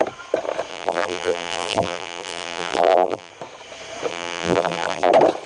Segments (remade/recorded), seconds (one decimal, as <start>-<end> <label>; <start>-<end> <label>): 0.0-0.7 recorded; 0.7-3.3 remade; 3.3-4.1 recorded; 4.1-5.1 remade; 5.1-5.5 recorded